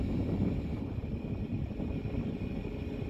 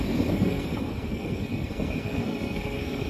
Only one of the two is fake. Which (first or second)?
second